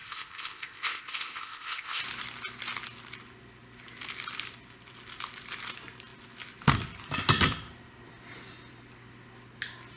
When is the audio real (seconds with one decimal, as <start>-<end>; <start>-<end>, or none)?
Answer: 2.0-10.0